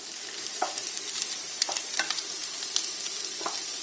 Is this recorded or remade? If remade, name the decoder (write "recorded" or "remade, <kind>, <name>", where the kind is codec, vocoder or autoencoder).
recorded